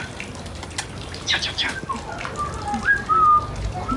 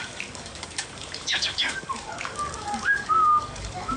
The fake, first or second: second